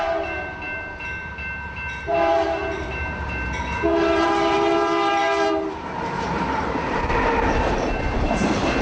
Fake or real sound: fake